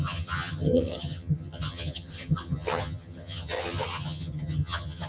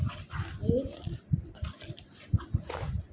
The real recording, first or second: second